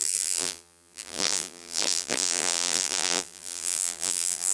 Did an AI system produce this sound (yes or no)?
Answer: yes